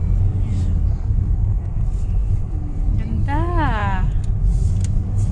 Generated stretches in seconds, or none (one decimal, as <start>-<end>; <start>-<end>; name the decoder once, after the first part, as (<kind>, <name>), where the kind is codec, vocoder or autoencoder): 0.9-1.8 (codec, SNAC)